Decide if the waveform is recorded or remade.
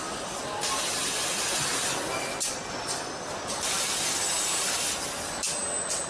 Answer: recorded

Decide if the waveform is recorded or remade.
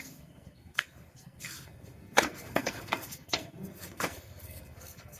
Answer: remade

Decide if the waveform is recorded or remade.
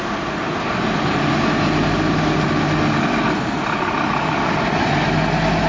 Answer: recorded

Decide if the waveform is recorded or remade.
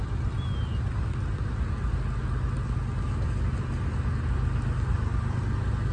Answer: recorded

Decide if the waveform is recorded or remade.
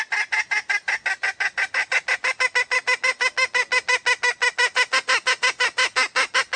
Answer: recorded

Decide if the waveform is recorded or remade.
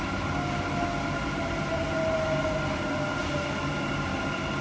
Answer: recorded